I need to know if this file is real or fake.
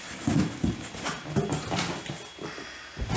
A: real